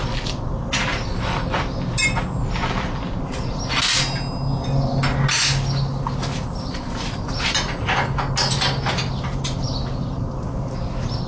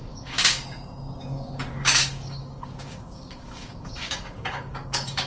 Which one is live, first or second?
first